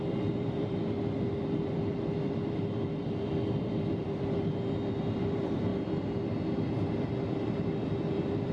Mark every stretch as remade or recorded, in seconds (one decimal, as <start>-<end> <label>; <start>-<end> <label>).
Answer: 0.0-0.8 remade; 0.8-4.0 recorded; 4.0-5.7 remade; 5.7-7.2 recorded; 7.2-8.5 remade